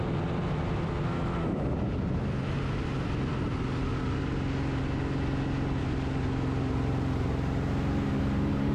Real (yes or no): yes